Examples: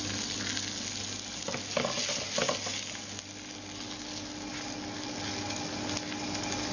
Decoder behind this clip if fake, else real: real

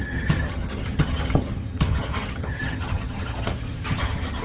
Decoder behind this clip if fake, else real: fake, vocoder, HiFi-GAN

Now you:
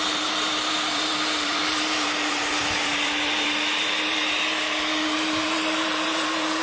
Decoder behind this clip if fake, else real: fake, vocoder, BigVGAN v2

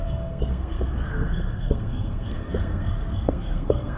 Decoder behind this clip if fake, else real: fake, codec, SNAC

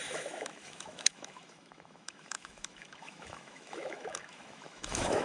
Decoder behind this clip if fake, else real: fake, autoencoder, DAC-VAE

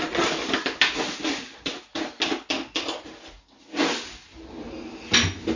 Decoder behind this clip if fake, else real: real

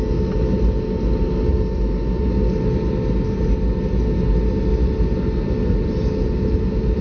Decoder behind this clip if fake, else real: real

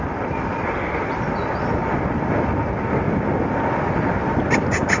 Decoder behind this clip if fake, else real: real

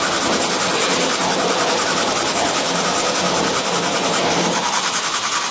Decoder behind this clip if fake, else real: real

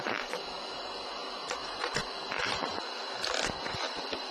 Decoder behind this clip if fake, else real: real